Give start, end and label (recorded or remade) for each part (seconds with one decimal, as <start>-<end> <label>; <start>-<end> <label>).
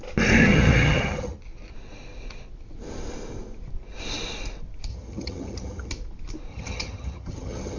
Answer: 0.0-0.4 recorded; 0.4-1.4 remade; 1.4-4.9 recorded; 4.9-5.9 remade; 5.9-6.5 recorded; 6.5-7.8 remade